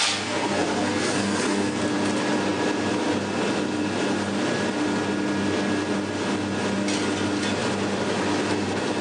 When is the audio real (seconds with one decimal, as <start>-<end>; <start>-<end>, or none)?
1.8-9.0